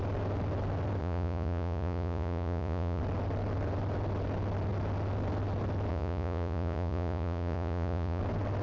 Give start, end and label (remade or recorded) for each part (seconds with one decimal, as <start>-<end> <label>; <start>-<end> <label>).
0.0-1.0 recorded; 1.0-3.0 remade; 3.0-5.9 recorded; 5.9-8.2 remade; 8.2-8.6 recorded